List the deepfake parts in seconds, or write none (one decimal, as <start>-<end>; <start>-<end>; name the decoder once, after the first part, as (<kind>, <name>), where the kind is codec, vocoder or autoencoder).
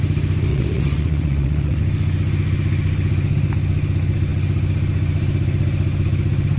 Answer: 0.5-1.8 (vocoder, WaveNeXt)